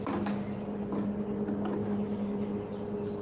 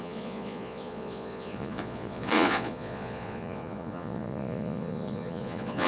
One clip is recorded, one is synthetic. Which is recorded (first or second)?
first